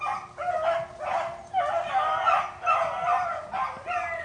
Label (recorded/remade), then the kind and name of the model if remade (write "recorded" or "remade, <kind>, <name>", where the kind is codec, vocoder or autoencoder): recorded